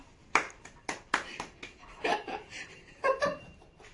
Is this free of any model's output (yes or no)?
no